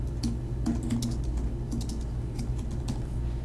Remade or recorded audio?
recorded